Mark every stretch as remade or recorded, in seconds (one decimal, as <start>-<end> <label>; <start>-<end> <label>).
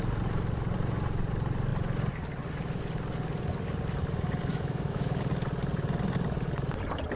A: 0.0-4.5 recorded; 4.5-5.2 remade; 5.2-7.2 recorded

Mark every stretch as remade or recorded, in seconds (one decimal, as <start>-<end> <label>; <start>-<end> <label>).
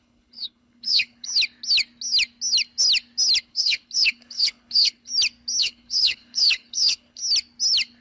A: 0.0-1.3 remade; 1.3-3.4 recorded; 3.4-5.1 remade; 5.1-5.6 recorded; 5.6-7.2 remade; 7.2-8.0 recorded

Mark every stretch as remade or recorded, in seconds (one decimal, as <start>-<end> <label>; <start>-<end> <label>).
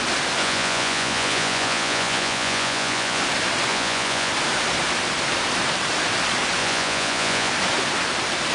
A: 0.0-0.4 recorded; 0.4-3.2 remade; 3.2-3.7 recorded; 3.7-4.3 remade; 4.3-6.6 recorded; 6.6-7.5 remade; 7.5-8.5 recorded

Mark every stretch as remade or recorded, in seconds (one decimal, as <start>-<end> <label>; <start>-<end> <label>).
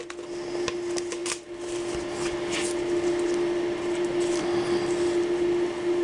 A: 0.0-6.0 recorded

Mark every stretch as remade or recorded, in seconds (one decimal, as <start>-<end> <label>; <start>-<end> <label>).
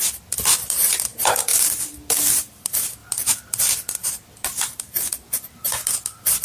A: 0.0-6.4 recorded